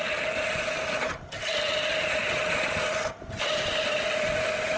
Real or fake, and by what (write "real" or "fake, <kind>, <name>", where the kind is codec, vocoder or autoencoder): real